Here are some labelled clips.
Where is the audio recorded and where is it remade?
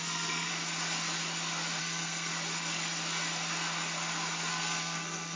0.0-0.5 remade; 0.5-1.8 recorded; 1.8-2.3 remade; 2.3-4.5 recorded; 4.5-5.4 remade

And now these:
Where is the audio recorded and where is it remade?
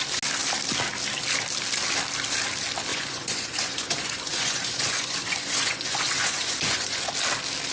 0.0-2.9 recorded; 2.9-7.1 remade; 7.1-7.7 recorded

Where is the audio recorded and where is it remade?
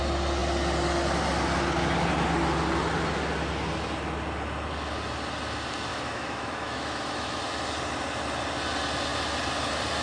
0.0-5.9 recorded; 5.9-7.4 remade; 7.4-10.0 recorded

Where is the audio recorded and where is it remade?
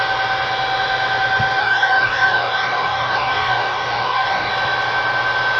0.0-1.6 recorded; 1.6-4.5 remade; 4.5-5.6 recorded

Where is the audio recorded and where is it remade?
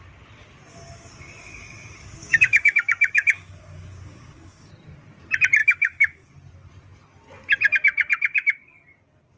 0.0-0.7 recorded; 0.7-4.7 remade; 4.7-5.6 recorded; 5.6-6.3 remade; 6.3-9.4 recorded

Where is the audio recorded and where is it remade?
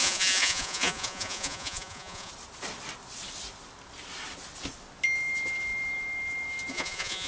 0.0-2.3 remade; 2.3-6.7 recorded; 6.7-7.3 remade